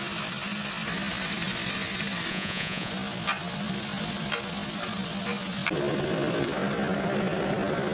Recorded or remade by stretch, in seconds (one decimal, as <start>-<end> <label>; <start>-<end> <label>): 0.0-2.3 recorded; 2.3-2.9 remade; 2.9-7.9 recorded

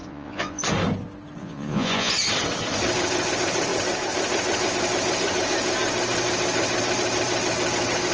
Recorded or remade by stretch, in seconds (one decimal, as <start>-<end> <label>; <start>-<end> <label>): 0.0-0.6 remade; 0.6-1.4 recorded; 1.4-2.1 remade; 2.1-8.1 recorded

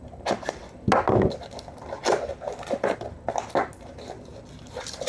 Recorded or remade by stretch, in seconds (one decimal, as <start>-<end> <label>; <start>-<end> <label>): 0.0-5.1 recorded

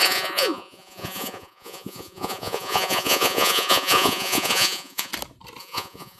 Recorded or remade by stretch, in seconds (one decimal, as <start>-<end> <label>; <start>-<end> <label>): 0.0-5.1 remade; 5.1-5.6 recorded; 5.6-6.2 remade